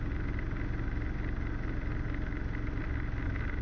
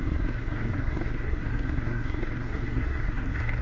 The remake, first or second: second